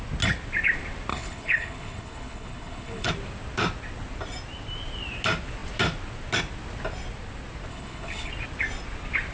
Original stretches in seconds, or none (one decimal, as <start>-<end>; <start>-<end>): 0.0-1.1; 3.1-7.7; 8.3-9.3